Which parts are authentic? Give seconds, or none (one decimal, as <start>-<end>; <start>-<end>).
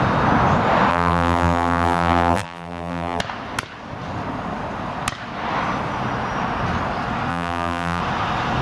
0.0-0.9; 3.2-7.3; 8.0-8.6